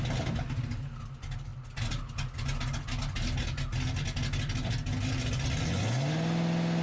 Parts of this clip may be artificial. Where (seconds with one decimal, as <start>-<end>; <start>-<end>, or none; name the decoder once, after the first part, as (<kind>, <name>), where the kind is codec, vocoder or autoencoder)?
none